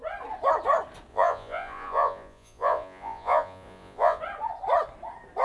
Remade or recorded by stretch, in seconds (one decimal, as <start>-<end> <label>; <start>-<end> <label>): 0.0-1.1 recorded; 1.1-4.2 remade; 4.2-5.4 recorded